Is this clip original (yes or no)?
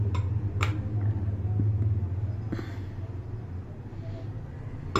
yes